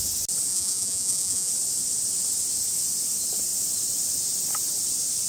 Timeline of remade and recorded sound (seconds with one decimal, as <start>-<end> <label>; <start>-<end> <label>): 0.0-0.5 recorded; 0.5-1.5 remade; 1.5-5.3 recorded